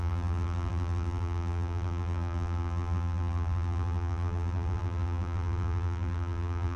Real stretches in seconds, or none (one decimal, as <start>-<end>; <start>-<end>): none